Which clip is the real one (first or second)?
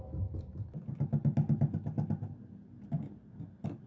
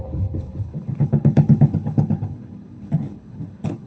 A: first